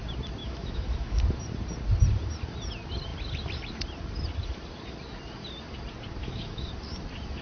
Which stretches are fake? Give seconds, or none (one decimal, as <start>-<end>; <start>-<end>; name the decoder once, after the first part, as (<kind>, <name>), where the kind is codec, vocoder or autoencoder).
0.4-1.2 (autoencoder, DAC-VAE); 6.2-6.7